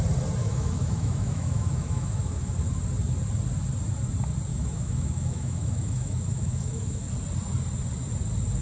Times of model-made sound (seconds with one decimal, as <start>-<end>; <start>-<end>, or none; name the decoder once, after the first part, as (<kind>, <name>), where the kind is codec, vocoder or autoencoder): 0.4-2.5 (autoencoder, DAC-VAE); 4.5-7.1